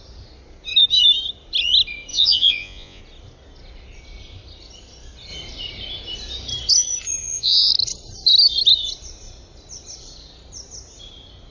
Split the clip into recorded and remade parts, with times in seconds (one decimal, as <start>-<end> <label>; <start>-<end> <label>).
0.0-2.1 recorded; 2.1-3.0 remade; 3.0-7.2 recorded; 7.2-7.7 remade; 7.7-11.5 recorded